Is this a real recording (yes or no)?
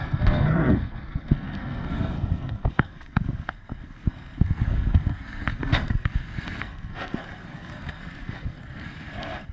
no